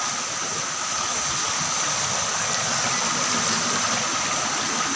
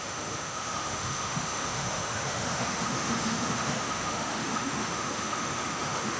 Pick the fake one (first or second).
second